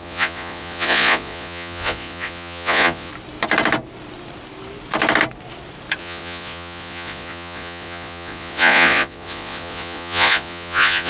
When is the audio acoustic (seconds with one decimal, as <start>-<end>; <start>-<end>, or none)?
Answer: 3.1-6.0